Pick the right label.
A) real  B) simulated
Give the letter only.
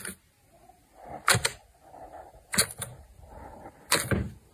A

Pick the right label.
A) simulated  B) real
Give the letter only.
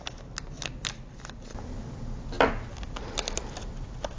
B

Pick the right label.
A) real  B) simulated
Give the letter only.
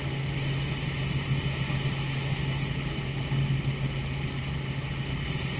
A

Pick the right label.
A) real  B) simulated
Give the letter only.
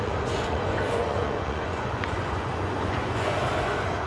B